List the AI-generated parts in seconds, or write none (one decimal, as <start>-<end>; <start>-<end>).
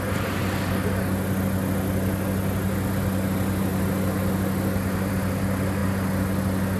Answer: none